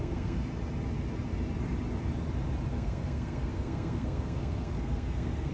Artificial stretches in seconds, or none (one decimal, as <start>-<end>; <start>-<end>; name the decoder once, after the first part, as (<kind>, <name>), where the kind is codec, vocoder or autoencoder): 0.0-0.5 (codec, SNAC); 2.7-5.5